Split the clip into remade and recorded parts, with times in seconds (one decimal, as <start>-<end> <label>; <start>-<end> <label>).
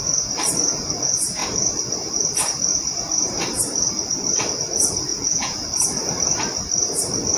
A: 0.0-5.1 recorded; 5.1-5.7 remade; 5.7-7.4 recorded